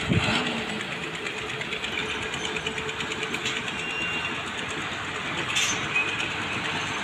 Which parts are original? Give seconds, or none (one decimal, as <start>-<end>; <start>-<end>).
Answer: 0.0-2.0; 2.6-6.0